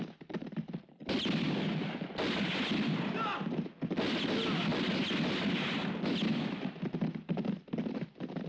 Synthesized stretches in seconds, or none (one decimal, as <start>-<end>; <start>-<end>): none